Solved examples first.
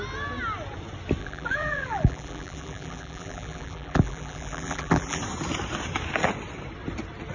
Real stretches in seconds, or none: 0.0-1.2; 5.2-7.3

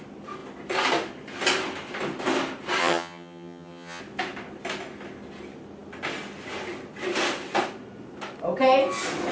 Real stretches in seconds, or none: 0.0-2.8; 4.0-9.3

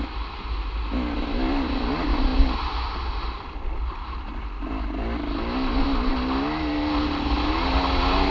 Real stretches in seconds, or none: 0.0-8.3

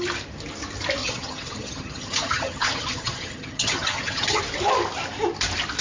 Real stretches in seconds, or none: 0.0-1.0; 4.4-5.8

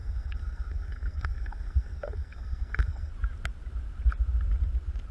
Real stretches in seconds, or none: 3.1-5.1

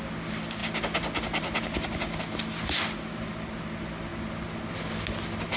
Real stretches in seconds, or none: 0.0-5.6

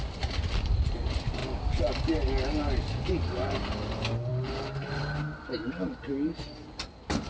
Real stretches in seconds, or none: 0.0-7.3

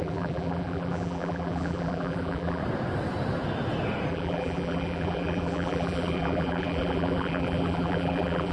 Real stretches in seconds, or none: 2.6-4.1